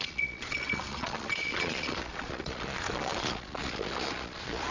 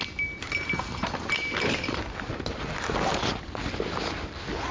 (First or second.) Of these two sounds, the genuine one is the second